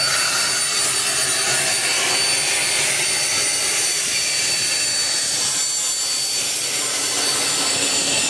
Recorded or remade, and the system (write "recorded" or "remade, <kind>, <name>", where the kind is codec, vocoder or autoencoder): recorded